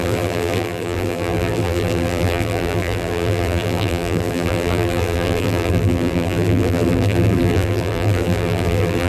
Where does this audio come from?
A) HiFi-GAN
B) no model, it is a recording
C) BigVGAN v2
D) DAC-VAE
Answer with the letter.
C